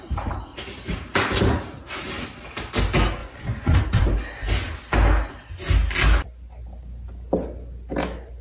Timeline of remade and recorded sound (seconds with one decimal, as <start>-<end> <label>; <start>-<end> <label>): 0.0-3.2 recorded; 3.2-3.8 remade; 3.8-8.4 recorded